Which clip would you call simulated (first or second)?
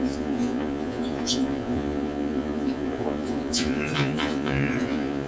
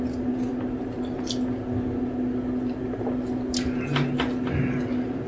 first